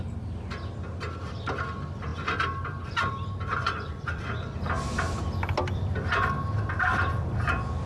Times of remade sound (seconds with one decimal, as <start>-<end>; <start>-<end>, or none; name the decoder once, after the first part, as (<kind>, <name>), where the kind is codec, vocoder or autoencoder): 3.6-4.3 (vocoder, Vocos)